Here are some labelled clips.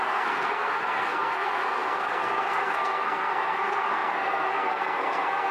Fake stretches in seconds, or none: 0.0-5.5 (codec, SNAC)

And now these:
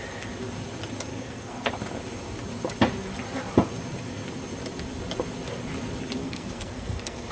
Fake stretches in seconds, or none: 1.1-1.7 (codec, SNAC); 6.2-7.3

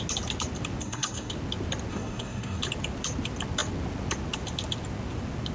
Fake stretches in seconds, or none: 0.8-1.3 (codec, SNAC); 1.9-2.6

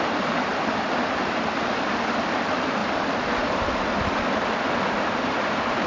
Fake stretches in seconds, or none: none

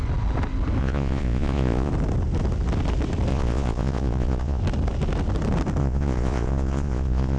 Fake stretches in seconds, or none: 0.8-1.9 (vocoder, Vocos); 3.3-4.6; 5.8-7.4

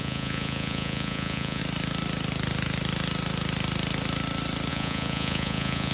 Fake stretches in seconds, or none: 0.0-1.6 (vocoder, Vocos); 4.7-5.9

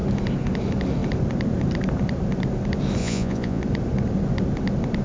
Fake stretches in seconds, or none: 3.0-3.6 (vocoder, Vocos)

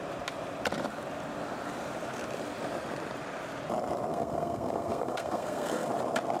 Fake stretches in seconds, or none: 4.1-5.9 (codec, SNAC)